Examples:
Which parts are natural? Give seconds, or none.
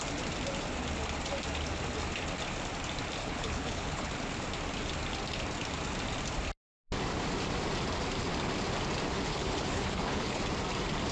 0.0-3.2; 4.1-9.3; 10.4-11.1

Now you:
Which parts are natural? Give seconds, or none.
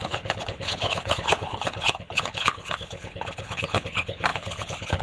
none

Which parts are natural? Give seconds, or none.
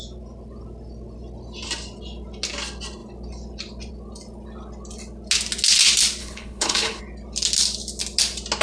0.0-6.2; 7.0-8.6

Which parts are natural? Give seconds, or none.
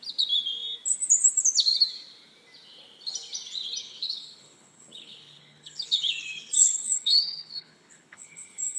0.0-3.8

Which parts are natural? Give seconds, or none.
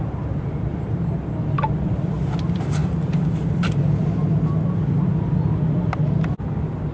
0.0-6.9